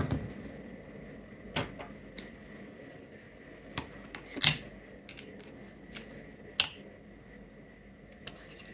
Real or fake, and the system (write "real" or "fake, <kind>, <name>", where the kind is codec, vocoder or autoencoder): real